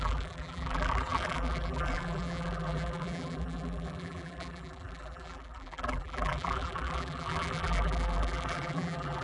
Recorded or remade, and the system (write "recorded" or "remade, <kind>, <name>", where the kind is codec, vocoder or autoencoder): remade, vocoder, BigVGAN v2